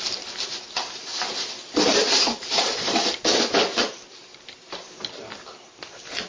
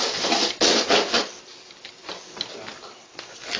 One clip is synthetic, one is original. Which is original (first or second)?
second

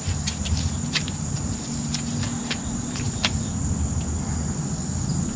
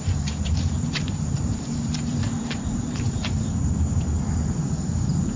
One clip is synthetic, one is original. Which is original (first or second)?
first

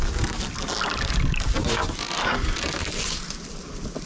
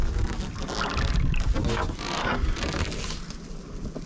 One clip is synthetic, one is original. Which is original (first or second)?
second